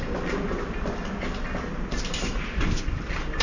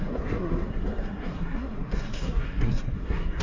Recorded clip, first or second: first